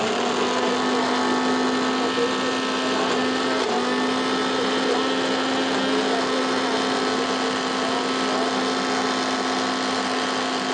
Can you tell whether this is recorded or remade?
recorded